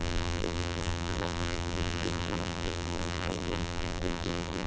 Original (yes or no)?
no